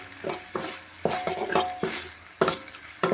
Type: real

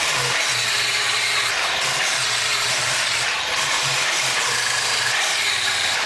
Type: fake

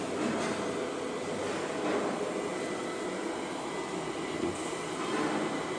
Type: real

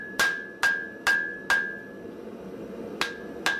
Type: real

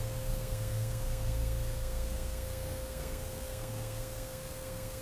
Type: fake